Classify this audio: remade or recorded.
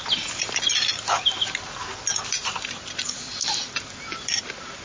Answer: recorded